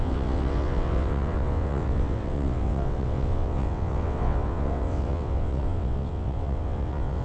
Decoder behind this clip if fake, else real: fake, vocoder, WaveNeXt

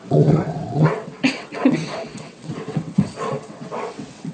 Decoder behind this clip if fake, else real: fake, vocoder, WaveNeXt